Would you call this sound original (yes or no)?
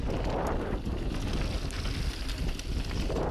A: yes